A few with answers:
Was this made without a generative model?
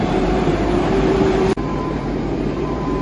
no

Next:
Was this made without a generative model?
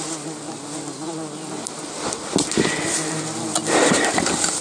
yes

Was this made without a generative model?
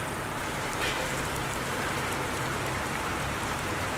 no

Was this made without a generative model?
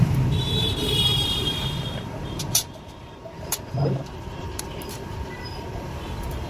no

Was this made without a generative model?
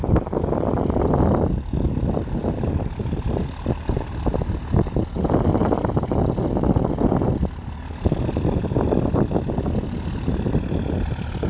yes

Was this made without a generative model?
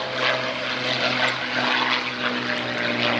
yes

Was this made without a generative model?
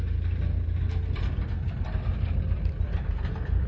yes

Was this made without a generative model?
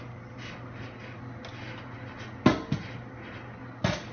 yes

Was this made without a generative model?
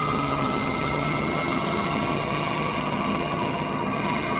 no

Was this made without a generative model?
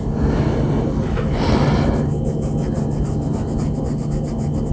yes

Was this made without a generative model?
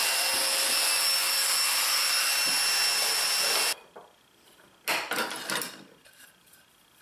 yes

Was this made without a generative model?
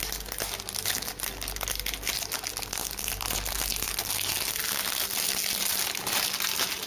yes